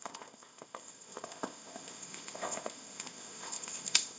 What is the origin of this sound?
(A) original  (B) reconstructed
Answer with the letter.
B